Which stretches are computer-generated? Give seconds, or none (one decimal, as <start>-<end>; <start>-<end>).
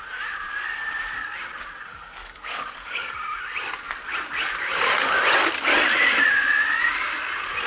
2.2-3.1